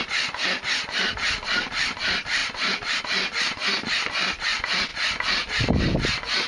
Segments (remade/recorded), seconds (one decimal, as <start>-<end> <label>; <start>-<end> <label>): 0.0-6.5 recorded